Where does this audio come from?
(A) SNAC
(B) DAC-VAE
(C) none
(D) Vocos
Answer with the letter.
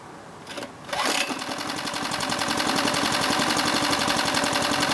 C